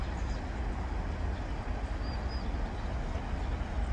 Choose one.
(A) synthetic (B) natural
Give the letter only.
B